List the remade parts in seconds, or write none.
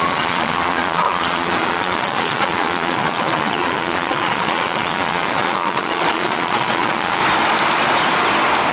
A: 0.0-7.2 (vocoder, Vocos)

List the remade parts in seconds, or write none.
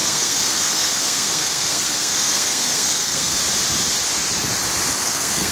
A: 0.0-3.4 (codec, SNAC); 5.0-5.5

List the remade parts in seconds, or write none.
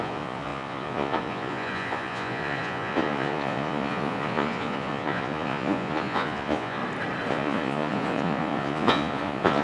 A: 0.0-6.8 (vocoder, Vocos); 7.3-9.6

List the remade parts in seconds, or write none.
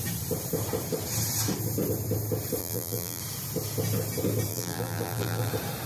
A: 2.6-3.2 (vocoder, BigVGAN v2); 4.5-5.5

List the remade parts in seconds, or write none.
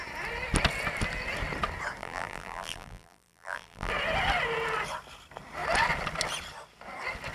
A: 2.0-3.9 (vocoder, BigVGAN v2)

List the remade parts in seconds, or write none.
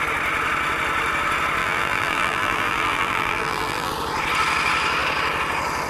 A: 1.6-3.9 (vocoder, BigVGAN v2)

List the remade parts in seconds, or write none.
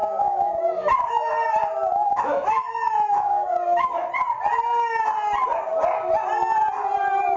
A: 0.0-1.3 (autoencoder, DAC-VAE); 2.1-4.1